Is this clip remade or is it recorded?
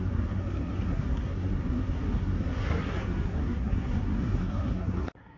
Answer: remade